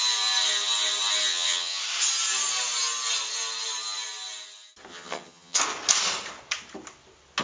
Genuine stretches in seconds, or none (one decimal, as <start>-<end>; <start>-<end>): 0.0-1.3; 1.8-4.9; 5.6-7.4

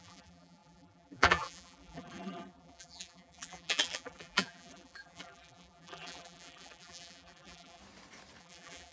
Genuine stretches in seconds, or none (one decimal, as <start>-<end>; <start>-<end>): 7.8-8.4

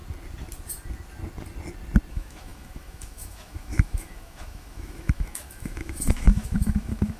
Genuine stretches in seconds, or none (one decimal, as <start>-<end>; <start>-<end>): 0.0-2.1